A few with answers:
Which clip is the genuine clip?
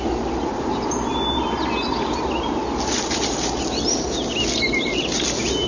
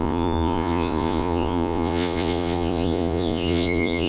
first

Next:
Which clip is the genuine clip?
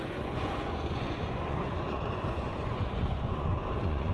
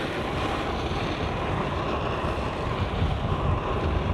second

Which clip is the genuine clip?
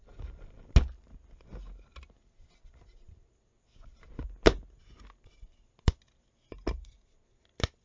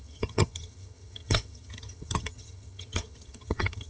first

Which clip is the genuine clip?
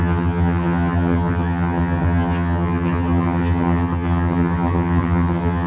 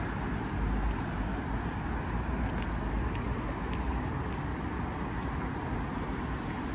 second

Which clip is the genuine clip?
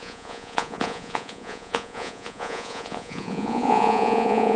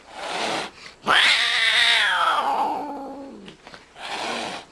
second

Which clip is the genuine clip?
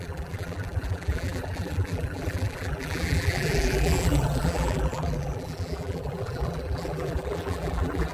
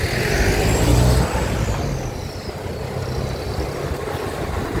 second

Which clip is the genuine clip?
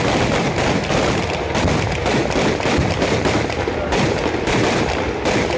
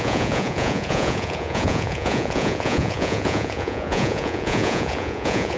first